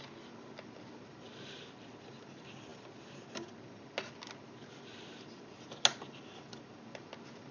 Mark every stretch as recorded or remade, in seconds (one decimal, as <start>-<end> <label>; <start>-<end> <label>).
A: 0.0-7.5 recorded